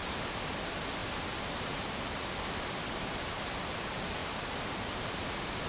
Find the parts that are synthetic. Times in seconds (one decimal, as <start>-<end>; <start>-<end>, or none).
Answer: none